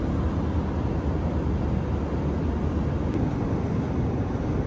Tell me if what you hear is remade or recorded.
recorded